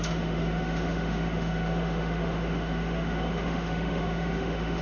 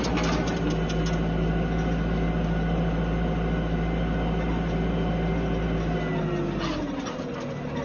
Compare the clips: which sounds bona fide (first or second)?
second